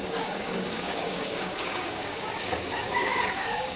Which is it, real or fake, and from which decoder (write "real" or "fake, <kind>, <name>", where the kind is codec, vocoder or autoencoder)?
fake, codec, DAC